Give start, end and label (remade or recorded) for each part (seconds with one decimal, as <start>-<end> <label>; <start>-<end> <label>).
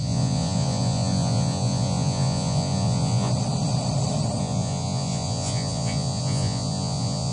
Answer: 0.0-3.3 remade; 3.3-4.4 recorded; 4.4-7.3 remade